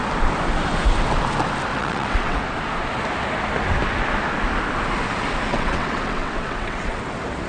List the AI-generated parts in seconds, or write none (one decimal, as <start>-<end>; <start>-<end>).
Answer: 1.7-2.4; 5.5-7.0